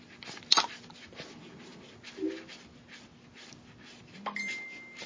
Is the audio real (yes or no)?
yes